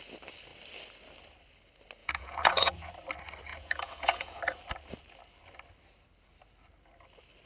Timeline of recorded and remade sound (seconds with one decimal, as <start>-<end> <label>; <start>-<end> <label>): 0.0-2.0 recorded; 2.0-2.9 remade; 2.9-3.5 recorded; 3.5-4.4 remade; 4.4-7.5 recorded